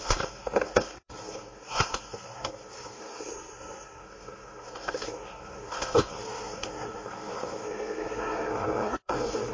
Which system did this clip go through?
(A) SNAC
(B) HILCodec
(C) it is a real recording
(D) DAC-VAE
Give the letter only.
A